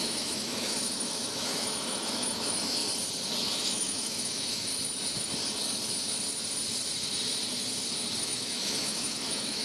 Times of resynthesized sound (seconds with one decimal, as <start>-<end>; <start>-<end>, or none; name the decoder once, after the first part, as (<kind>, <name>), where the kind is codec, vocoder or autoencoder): 0.0-2.8 (autoencoder, DAC-VAE); 3.4-4.7; 8.2-9.6